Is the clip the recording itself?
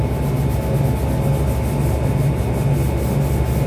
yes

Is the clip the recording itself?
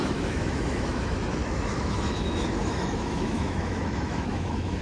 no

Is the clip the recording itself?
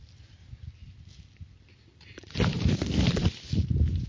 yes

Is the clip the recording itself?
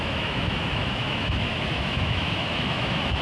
no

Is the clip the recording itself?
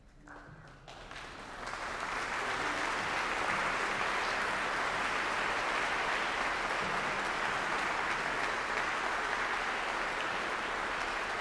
yes